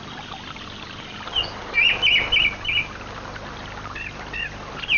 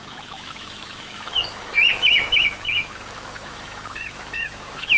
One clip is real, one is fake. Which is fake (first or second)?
second